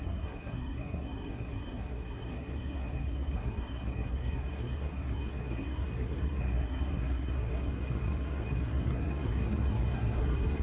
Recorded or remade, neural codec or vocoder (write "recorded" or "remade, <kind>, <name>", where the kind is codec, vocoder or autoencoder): remade, codec, SNAC